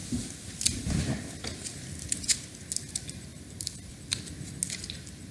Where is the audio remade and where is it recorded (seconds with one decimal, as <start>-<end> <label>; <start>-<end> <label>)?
0.0-0.6 remade; 0.6-3.3 recorded; 3.3-4.0 remade; 4.0-5.3 recorded